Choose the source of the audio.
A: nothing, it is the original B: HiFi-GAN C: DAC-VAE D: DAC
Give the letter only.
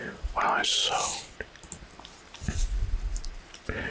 A